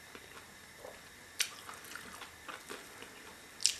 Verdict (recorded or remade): recorded